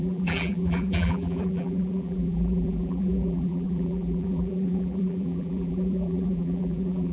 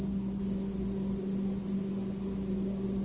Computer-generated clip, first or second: first